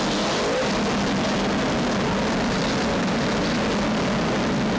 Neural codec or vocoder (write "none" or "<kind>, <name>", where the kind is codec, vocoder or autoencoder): none